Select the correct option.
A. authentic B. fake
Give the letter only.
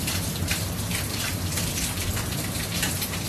B